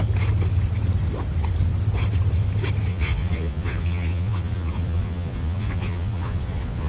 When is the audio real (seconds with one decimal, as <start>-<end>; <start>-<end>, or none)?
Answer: 0.0-2.9